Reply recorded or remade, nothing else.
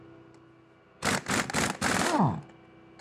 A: recorded